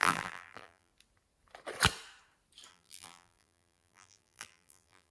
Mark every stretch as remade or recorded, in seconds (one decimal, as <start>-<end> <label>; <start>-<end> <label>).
0.0-0.9 remade; 0.9-2.7 recorded; 2.7-5.1 remade